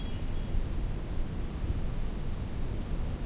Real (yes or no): yes